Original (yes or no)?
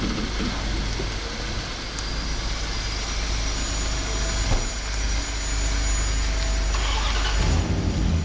yes